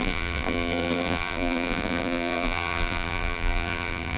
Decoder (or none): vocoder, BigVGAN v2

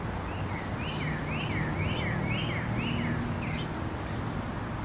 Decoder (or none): none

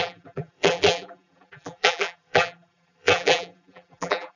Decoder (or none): vocoder, BigVGAN v2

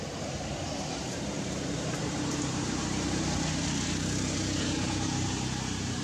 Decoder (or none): vocoder, BigVGAN v2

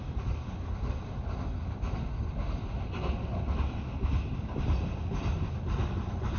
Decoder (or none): vocoder, BigVGAN v2